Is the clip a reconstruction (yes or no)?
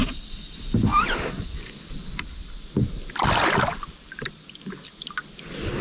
no